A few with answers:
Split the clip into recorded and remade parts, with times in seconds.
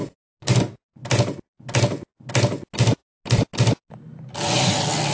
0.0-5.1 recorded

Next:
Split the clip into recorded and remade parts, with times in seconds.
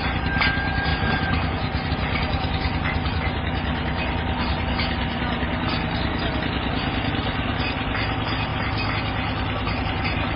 0.0-10.4 recorded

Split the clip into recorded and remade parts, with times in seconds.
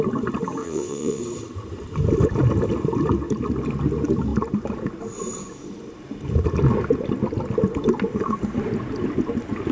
0.0-0.6 recorded; 0.6-1.2 remade; 1.2-9.7 recorded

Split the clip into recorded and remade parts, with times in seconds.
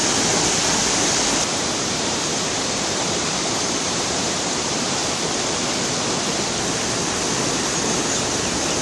0.0-1.5 recorded; 1.5-5.0 remade; 5.0-7.9 recorded; 7.9-8.8 remade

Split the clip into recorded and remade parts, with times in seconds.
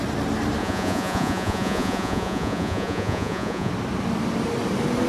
0.0-0.6 recorded; 0.6-3.7 remade; 3.7-5.1 recorded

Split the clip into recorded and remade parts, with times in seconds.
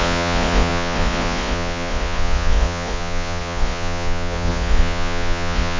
0.0-5.8 remade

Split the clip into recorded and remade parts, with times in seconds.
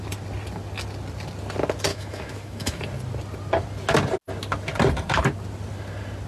0.0-1.9 recorded; 1.9-2.8 remade; 2.8-6.3 recorded